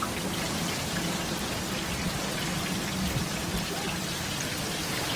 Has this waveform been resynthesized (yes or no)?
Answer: no